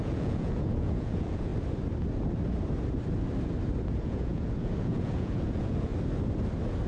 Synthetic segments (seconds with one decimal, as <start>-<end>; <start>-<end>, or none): 0.0-1.5; 3.9-5.9